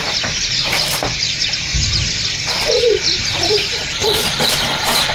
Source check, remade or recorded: remade